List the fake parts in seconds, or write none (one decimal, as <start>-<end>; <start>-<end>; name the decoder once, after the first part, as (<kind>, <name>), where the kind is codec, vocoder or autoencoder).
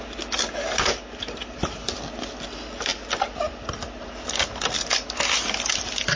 none